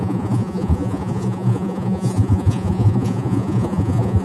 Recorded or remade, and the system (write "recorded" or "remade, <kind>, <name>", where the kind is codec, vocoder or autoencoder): remade, vocoder, Vocos